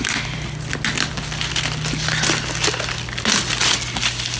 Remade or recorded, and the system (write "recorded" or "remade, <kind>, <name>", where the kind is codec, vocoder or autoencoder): recorded